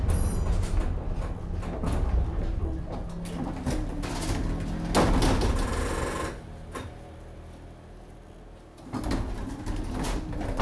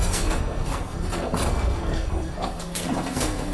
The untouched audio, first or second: first